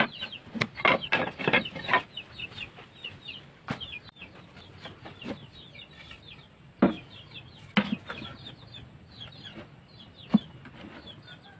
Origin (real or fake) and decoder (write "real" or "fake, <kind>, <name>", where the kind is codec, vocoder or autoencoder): real